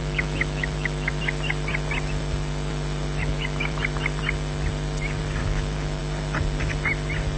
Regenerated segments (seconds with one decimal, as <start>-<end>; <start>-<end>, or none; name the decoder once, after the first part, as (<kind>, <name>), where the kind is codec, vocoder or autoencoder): 0.0-1.1 (autoencoder, DAC-VAE); 3.2-3.8; 5.4-6.0